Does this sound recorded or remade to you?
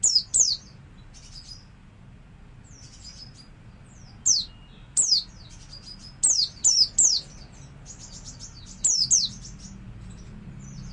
recorded